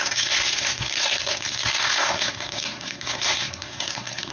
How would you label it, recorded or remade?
remade